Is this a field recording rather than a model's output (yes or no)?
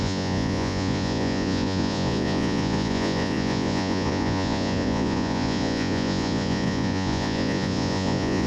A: no